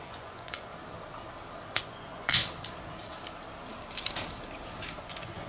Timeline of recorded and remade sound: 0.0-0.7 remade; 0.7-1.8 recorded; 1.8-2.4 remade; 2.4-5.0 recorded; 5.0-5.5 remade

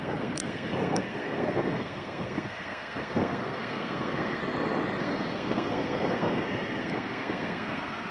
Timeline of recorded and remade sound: 0.0-4.4 remade; 4.4-5.0 recorded; 5.0-8.1 remade

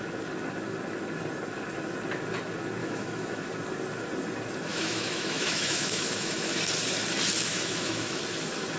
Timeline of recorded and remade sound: 0.0-2.8 recorded; 2.8-3.5 remade; 3.5-4.7 recorded; 4.7-6.5 remade; 6.5-7.5 recorded; 7.5-8.2 remade; 8.2-8.8 recorded

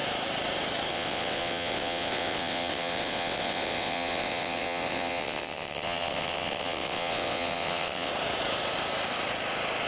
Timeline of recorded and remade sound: 0.0-0.9 recorded; 0.9-8.1 remade; 8.1-9.9 recorded

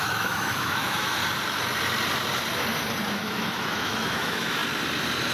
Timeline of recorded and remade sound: 0.0-1.2 remade; 1.2-3.1 recorded; 3.1-4.6 remade; 4.6-5.3 recorded